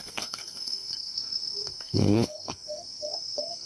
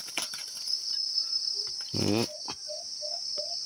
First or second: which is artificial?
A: first